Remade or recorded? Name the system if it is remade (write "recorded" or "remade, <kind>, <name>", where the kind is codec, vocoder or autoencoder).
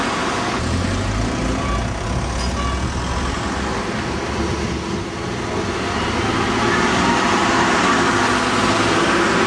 recorded